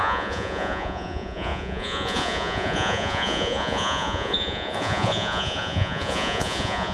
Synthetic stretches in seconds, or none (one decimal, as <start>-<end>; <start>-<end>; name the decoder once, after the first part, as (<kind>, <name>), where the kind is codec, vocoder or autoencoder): 0.0-6.9 (vocoder, Vocos)